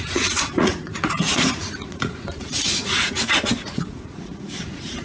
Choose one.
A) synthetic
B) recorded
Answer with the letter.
A